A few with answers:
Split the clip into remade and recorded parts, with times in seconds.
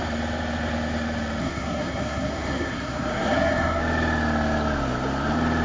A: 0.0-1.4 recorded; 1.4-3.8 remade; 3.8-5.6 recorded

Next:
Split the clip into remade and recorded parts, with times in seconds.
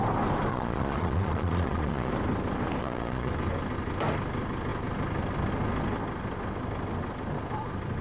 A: 0.0-0.5 recorded; 0.5-2.1 remade; 2.1-2.8 recorded; 2.8-3.3 remade; 3.3-8.0 recorded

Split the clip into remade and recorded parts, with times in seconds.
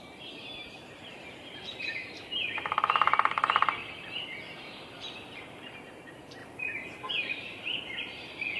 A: 0.0-3.8 remade; 3.8-4.8 recorded; 4.8-8.6 remade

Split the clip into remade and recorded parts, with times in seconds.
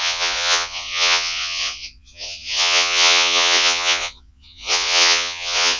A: 0.0-5.8 remade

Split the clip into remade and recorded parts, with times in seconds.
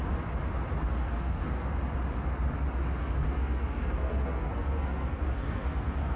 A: 0.0-0.8 recorded; 0.8-1.7 remade; 1.7-3.0 recorded; 3.0-6.2 remade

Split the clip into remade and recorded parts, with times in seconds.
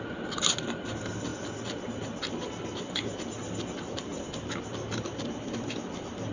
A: 0.0-6.3 recorded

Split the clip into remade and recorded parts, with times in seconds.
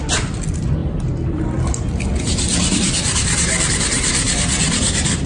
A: 0.0-5.3 recorded